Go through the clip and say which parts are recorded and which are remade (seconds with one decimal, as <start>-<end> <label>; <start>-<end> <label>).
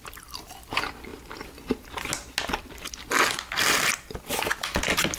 0.0-1.1 remade; 1.1-3.6 recorded; 3.6-5.2 remade